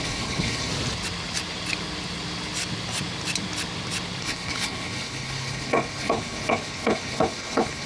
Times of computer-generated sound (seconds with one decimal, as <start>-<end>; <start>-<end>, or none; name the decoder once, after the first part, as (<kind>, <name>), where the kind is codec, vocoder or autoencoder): 0.0-0.7 (codec, HILCodec); 4.2-7.9